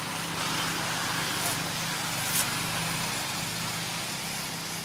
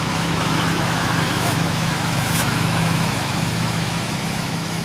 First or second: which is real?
first